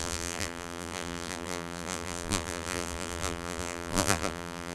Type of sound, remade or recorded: remade